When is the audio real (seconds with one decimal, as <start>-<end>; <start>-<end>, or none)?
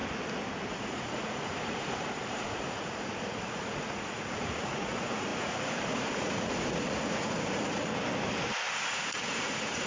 0.0-0.7; 7.9-8.7